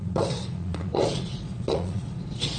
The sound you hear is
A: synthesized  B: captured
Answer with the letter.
A